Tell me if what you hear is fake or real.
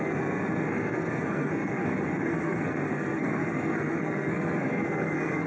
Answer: fake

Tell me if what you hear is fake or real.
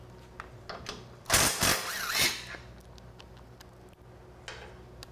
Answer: real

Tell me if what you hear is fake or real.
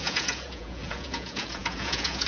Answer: fake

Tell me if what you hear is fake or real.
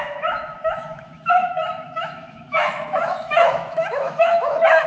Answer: fake